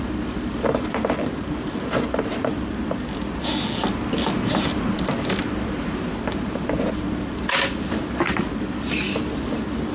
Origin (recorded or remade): recorded